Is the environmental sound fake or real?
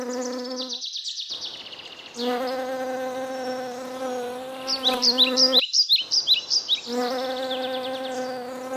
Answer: real